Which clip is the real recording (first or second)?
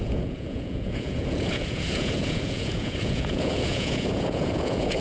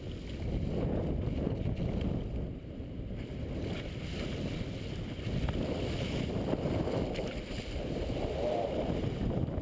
second